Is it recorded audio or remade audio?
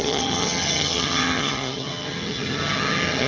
remade